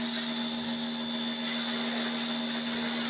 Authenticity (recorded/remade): recorded